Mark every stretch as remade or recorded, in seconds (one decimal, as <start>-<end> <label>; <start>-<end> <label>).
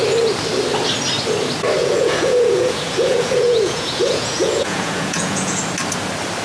0.0-1.8 recorded; 1.8-5.6 remade; 5.6-6.4 recorded